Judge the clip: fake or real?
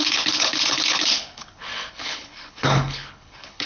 fake